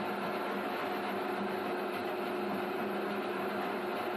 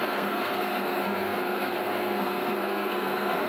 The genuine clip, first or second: first